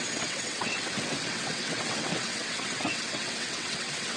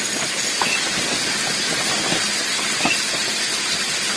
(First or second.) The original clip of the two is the second